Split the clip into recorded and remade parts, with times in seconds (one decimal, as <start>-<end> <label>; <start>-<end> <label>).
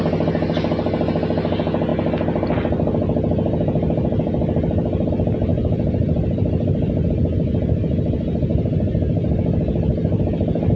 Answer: 0.0-10.8 recorded